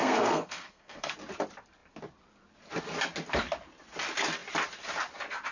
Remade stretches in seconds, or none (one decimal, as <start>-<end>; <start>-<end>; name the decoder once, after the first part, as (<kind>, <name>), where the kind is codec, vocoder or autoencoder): 0.0-1.1 (codec, SNAC)